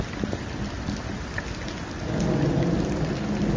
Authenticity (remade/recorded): recorded